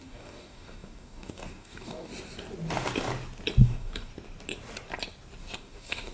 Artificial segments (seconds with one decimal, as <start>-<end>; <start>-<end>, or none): 0.0-2.1; 3.6-4.1; 5.4-6.1